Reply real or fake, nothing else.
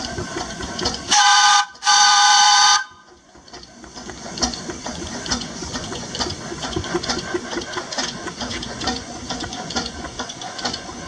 fake